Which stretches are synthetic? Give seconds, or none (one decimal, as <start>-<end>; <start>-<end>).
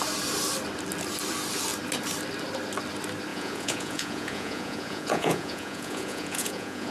3.3-6.9